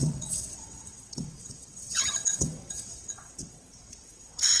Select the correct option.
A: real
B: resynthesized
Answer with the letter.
B